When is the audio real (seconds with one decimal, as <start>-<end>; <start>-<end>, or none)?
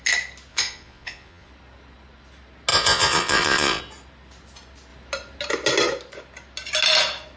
0.0-0.5; 1.5-2.7; 3.8-7.4